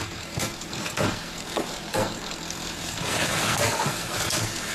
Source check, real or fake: fake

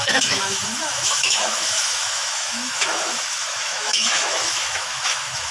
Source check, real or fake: fake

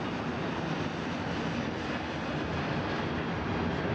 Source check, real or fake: real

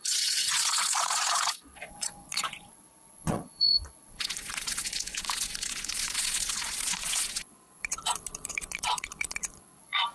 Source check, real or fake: fake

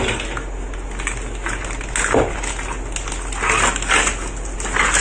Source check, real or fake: real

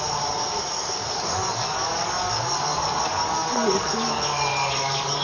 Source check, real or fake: fake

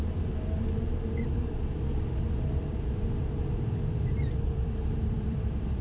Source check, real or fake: fake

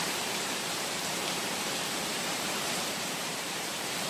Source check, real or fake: fake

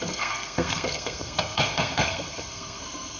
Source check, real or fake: fake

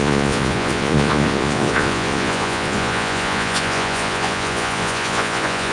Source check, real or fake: fake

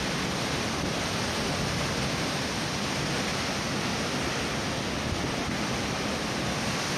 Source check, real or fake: real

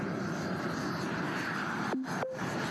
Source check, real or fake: real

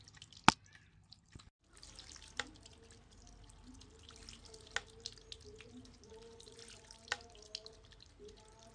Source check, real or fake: real